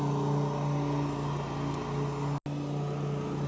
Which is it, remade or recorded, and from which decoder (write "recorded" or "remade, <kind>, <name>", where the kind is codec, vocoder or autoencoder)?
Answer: recorded